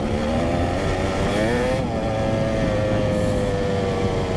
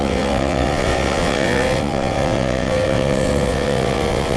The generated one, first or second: second